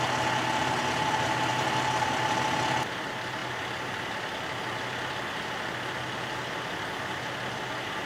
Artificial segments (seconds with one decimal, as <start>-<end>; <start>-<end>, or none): none

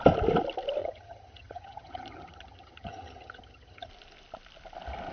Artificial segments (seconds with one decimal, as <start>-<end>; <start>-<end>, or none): 0.8-3.9